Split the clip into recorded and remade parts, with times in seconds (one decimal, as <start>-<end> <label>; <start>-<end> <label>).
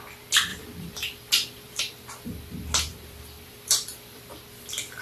0.0-0.5 recorded; 0.5-1.8 remade; 1.8-2.9 recorded; 2.9-4.2 remade; 4.2-5.0 recorded